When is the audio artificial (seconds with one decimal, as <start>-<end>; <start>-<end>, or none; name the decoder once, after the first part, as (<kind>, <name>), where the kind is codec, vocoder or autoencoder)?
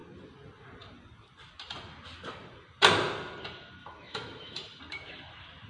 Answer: 3.8-4.8 (autoencoder, DAC-VAE)